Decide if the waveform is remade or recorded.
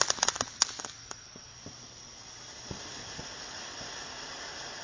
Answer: recorded